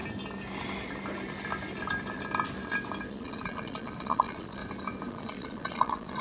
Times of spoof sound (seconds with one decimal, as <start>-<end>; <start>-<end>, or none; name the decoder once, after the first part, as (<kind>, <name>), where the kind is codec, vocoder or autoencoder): 3.1-4.6 (vocoder, Vocos); 5.1-6.2